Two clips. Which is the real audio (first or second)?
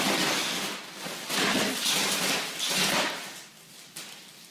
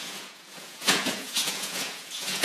first